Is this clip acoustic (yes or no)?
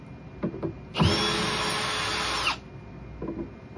yes